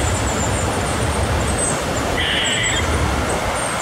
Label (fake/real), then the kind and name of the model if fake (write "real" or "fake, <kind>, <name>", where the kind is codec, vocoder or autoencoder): real